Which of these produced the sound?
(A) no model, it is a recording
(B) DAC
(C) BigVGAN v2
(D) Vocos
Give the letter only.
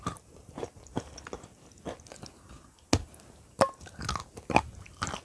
A